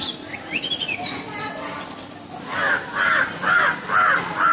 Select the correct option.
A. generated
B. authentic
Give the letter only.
B